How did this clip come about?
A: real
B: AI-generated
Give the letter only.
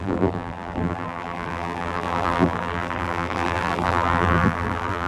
B